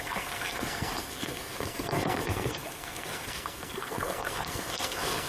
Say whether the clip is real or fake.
fake